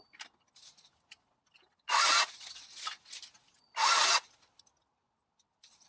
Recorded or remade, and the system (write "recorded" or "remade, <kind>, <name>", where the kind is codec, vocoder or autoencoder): recorded